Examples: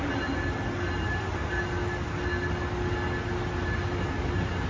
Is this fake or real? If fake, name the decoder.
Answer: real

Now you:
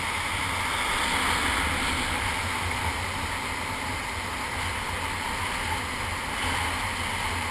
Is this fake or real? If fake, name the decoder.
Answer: real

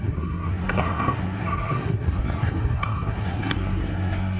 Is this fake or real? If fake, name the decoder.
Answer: fake, codec, SNAC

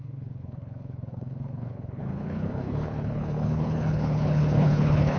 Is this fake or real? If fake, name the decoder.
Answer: fake, codec, HILCodec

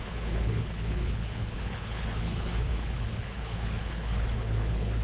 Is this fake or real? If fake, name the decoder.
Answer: fake, codec, HILCodec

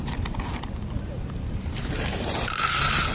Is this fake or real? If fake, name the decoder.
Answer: fake, vocoder, BigVGAN v2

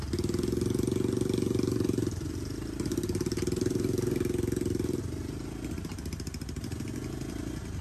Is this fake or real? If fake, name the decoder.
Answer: real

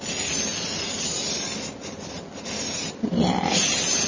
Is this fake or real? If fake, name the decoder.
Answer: real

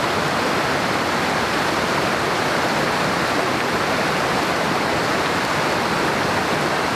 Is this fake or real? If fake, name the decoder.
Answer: real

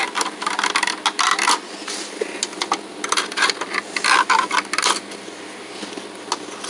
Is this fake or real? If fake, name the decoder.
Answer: real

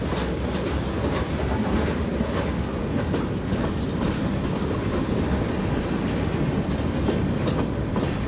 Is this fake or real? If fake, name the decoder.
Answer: real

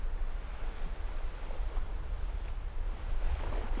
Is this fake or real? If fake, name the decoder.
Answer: real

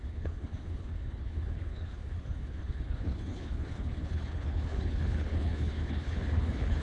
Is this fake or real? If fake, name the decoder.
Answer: fake, codec, HILCodec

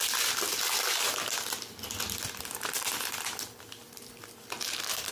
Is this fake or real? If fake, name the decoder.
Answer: real